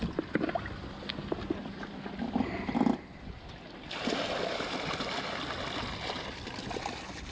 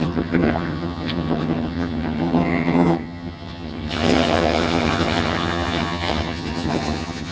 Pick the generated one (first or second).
second